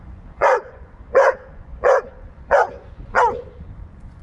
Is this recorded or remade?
remade